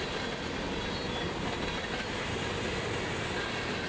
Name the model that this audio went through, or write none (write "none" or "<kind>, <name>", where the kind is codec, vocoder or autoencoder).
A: none